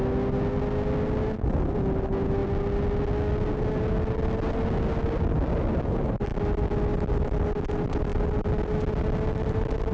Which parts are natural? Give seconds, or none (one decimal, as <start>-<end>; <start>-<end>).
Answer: 0.0-9.9